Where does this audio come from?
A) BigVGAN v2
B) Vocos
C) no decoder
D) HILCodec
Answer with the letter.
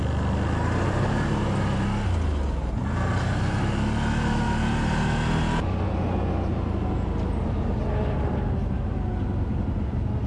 C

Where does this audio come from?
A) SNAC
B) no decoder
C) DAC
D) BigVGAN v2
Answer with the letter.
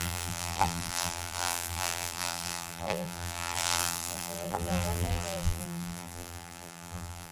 D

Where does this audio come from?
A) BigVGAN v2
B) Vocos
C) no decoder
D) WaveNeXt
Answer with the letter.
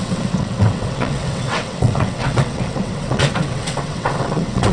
D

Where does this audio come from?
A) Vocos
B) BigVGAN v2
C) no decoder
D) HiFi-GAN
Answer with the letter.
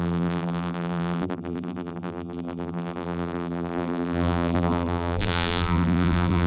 B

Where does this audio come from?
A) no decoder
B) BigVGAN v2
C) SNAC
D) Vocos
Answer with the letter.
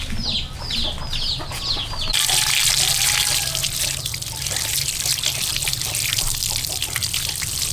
A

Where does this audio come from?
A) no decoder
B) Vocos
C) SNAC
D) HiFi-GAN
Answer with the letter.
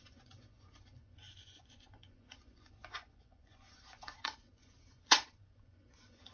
B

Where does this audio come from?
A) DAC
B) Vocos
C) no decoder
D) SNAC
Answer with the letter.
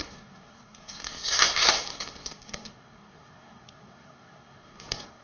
D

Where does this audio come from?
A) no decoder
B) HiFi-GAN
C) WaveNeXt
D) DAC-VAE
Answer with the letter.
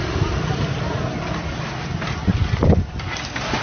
A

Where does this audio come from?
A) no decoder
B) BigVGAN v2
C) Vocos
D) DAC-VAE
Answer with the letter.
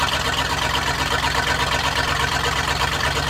B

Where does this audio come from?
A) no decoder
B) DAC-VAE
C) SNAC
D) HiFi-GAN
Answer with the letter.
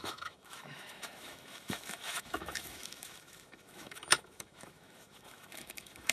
B